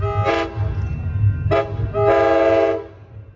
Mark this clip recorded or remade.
recorded